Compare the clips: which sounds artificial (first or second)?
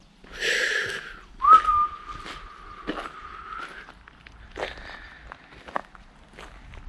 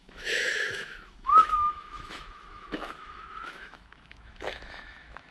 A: second